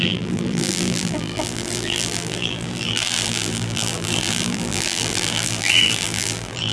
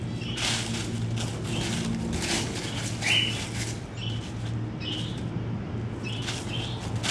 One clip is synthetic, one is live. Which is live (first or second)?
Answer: second